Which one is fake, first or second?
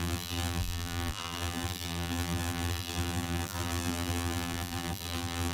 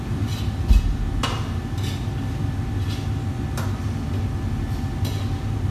first